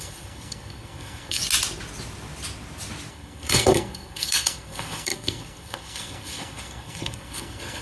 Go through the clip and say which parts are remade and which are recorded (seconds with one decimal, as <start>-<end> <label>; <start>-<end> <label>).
0.0-1.4 remade; 1.4-3.1 recorded; 3.1-7.8 remade